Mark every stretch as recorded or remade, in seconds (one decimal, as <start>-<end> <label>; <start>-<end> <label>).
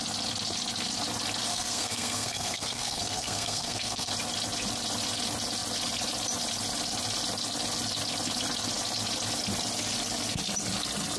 0.0-1.5 recorded; 1.5-4.1 remade; 4.1-11.2 recorded